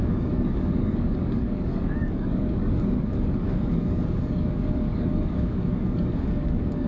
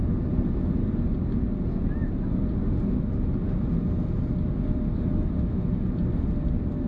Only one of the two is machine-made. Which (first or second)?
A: first